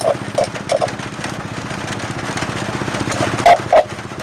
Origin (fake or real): real